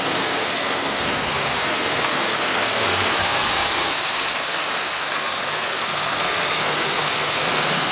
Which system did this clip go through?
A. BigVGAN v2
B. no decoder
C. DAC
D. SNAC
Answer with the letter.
D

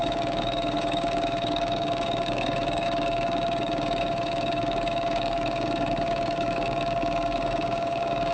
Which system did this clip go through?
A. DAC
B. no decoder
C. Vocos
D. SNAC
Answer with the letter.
A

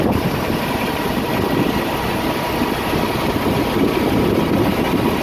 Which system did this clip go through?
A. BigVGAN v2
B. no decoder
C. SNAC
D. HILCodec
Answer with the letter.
B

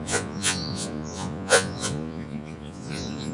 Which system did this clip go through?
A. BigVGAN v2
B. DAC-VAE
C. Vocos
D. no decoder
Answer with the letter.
C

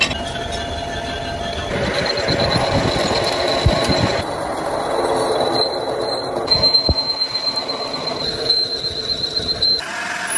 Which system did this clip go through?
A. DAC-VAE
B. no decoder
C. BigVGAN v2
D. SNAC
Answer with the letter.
B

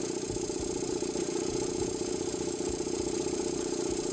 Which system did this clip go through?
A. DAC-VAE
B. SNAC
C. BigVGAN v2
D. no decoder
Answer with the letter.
C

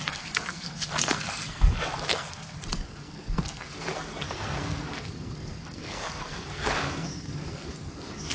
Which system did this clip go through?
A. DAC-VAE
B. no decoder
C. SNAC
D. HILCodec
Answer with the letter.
C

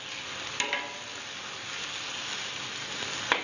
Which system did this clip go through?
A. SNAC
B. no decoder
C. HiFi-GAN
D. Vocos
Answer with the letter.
B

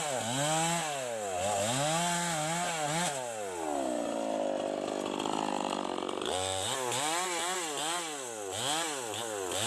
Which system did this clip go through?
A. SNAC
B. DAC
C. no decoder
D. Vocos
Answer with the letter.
C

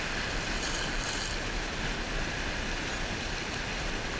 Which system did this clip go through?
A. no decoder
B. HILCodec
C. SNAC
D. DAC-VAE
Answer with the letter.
A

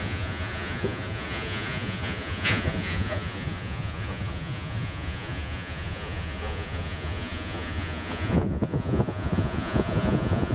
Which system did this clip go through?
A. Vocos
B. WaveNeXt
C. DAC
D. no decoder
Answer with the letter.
A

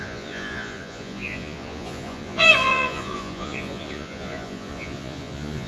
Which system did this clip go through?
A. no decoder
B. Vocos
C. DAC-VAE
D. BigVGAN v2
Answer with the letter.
B